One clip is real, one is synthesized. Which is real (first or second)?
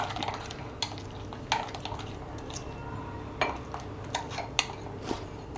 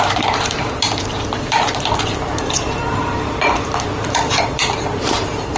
first